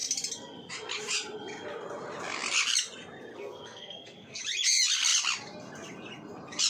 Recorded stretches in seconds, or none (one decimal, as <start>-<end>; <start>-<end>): 0.0-3.3; 4.4-6.7